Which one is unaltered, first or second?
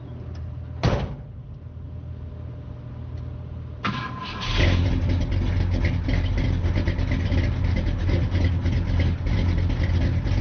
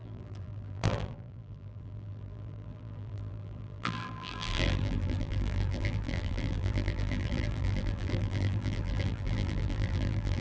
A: first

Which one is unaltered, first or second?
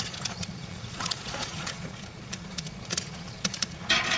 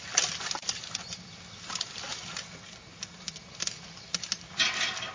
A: second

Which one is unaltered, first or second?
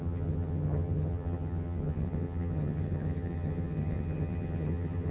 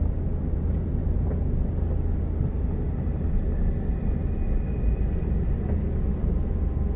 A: second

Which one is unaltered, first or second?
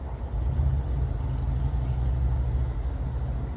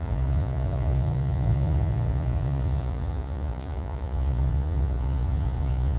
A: first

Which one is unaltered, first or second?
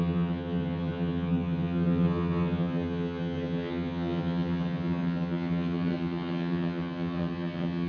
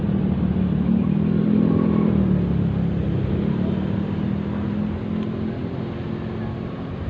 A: second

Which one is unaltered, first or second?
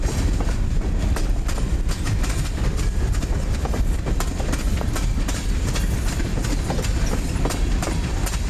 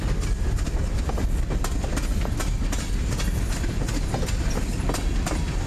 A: second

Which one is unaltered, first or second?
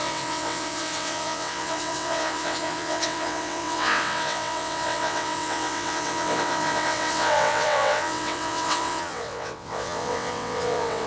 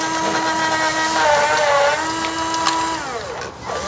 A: second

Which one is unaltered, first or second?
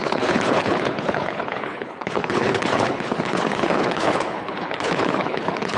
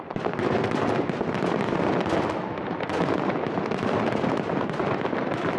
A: second